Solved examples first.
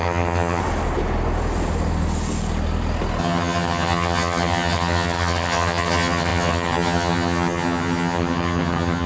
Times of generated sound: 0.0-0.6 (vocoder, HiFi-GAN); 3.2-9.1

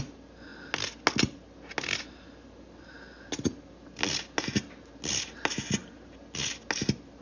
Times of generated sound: none

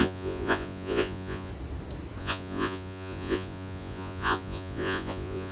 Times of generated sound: 0.0-1.5 (vocoder, Vocos); 2.2-5.5

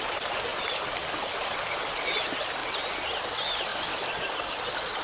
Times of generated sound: 0.5-1.1 (vocoder, BigVGAN v2); 2.6-3.2; 3.7-5.0

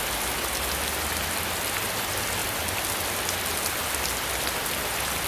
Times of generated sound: none